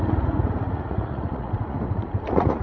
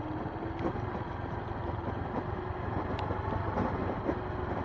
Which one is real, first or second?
second